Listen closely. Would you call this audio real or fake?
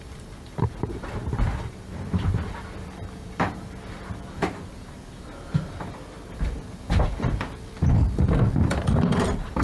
fake